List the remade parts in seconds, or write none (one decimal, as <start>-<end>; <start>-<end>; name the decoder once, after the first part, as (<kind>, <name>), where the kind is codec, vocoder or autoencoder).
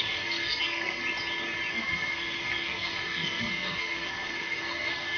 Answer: 0.0-1.0 (codec, SNAC); 1.7-5.2